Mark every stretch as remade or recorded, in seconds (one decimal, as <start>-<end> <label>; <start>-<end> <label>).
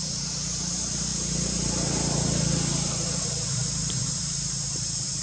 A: 0.0-5.2 remade